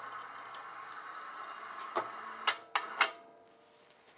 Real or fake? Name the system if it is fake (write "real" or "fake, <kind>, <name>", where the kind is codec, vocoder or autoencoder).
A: real